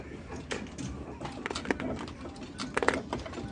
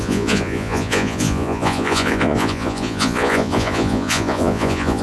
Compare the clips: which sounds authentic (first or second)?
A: first